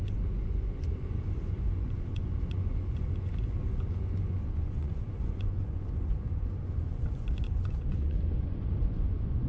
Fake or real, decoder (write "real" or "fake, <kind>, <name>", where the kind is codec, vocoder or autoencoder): fake, vocoder, Vocos